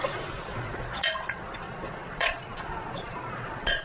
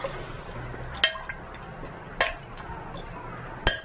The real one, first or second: second